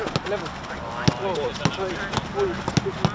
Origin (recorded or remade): recorded